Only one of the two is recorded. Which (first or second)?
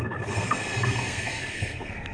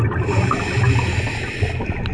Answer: second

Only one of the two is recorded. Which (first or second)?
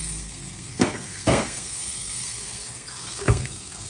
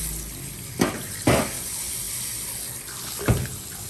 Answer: second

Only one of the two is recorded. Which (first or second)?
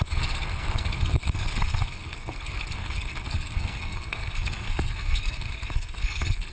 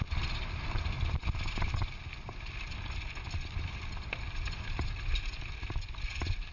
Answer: second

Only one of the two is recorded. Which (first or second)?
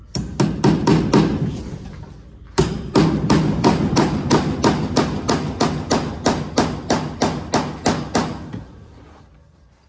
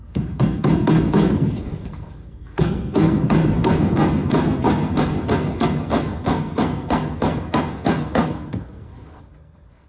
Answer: first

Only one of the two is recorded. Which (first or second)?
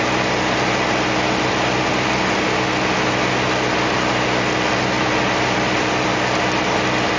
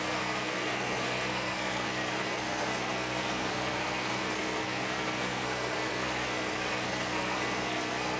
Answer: first